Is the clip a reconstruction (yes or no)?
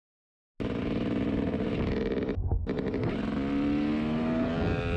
no